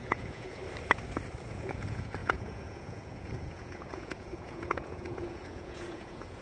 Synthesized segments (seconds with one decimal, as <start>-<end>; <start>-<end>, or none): 0.0-0.6; 1.5-6.4